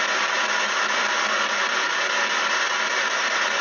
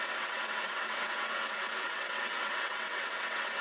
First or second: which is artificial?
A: second